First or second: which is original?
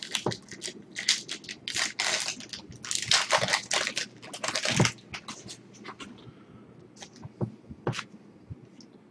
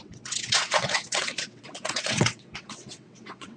first